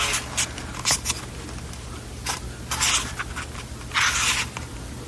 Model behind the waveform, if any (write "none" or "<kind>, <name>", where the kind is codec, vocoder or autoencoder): none